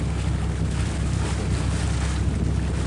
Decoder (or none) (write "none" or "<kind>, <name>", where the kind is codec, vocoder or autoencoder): none